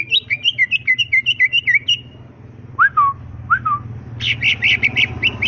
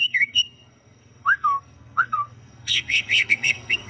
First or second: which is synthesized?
second